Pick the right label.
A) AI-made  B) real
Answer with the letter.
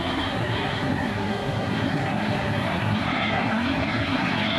A